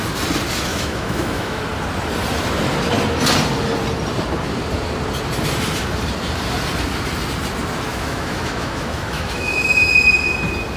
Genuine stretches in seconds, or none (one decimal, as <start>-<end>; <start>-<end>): 0.0-0.7; 1.6-7.9; 9.9-10.8

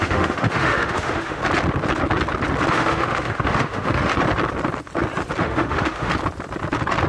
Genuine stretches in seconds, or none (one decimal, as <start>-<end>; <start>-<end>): 1.4-2.7; 4.1-5.4; 6.1-7.1

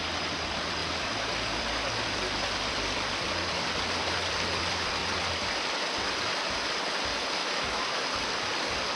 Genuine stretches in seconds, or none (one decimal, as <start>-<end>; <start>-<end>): 0.0-7.4; 8.0-9.0

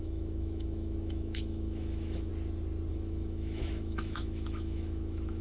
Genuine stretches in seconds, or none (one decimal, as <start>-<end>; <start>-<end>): 2.3-2.9

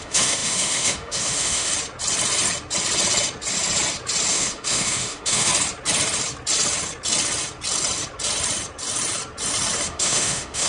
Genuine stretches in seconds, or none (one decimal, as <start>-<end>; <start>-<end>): 1.7-4.3; 5.5-9.9

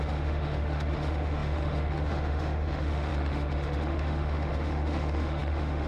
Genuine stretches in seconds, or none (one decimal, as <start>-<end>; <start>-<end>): none

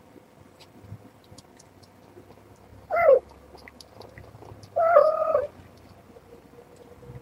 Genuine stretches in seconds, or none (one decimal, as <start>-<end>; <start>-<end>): 0.0-7.2